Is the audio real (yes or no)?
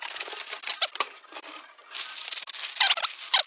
yes